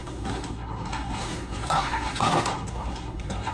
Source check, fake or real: fake